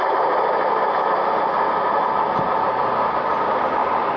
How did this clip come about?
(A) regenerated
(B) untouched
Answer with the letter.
B